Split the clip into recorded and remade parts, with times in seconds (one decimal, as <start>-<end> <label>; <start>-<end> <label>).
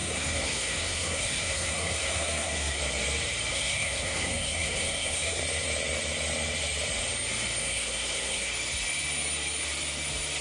0.0-2.8 remade; 2.8-3.5 recorded; 3.5-5.4 remade; 5.4-7.6 recorded; 7.6-8.5 remade; 8.5-10.4 recorded